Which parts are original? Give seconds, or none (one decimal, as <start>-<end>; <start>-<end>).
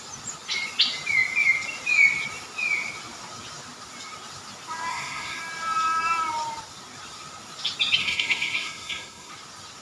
0.0-4.9; 5.4-8.0; 9.3-9.8